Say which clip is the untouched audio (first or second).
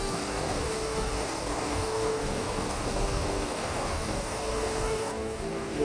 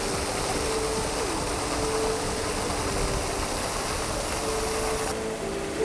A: second